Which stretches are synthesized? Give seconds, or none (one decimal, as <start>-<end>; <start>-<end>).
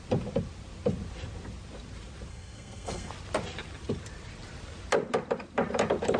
2.3-3.1